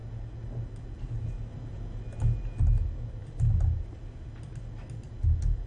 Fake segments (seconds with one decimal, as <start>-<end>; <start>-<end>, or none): none